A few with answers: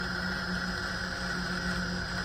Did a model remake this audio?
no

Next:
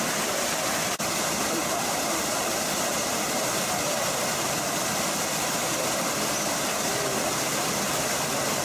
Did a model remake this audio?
yes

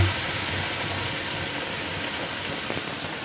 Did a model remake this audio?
yes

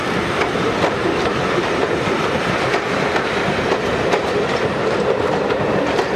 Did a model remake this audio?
yes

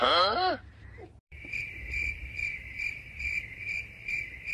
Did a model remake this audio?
yes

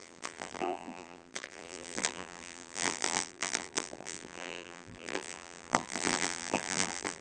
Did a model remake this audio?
yes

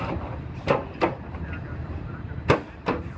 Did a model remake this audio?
yes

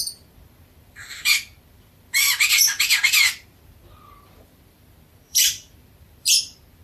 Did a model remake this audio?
yes